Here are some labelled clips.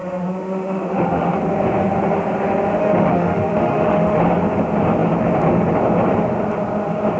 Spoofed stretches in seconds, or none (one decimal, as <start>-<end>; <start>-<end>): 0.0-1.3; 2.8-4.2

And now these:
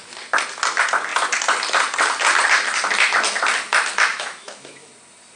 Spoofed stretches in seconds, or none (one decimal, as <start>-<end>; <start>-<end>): 4.1-4.9

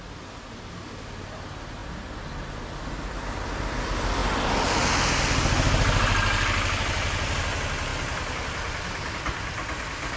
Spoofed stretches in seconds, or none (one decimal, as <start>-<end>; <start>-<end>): none

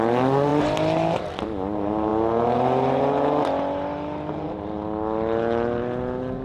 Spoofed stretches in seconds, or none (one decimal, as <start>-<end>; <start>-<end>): none

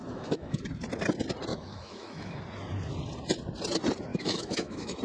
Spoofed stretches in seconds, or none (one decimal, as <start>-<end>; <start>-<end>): 0.0-0.6; 1.5-2.4; 4.1-5.0